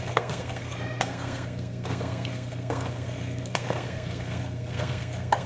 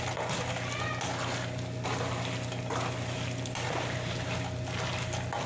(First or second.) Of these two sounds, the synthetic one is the first